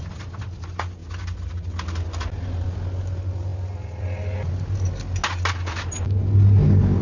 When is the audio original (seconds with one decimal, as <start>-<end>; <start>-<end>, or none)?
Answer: 0.0-7.0